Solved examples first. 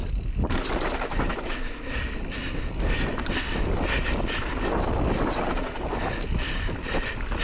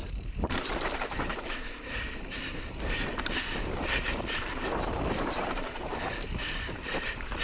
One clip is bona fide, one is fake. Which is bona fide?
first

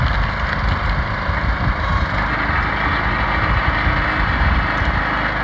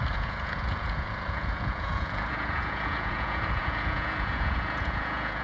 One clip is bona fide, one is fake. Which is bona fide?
first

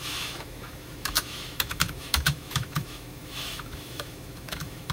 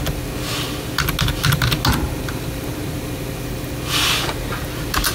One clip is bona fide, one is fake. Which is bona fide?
second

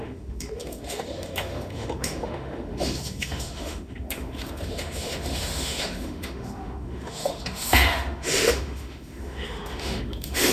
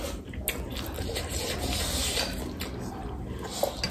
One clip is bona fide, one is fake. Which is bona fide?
second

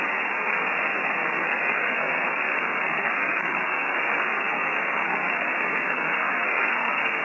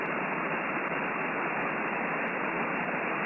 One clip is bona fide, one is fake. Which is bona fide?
second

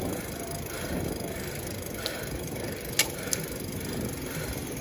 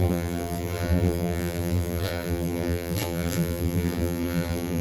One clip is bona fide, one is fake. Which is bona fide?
first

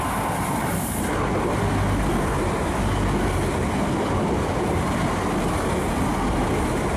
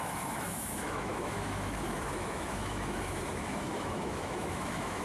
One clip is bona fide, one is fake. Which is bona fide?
first